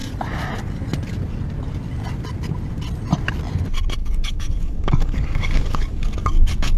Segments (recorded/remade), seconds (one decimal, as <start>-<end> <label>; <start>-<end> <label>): 0.0-4.0 recorded; 4.0-6.8 remade